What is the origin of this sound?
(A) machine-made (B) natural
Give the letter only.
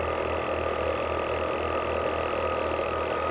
B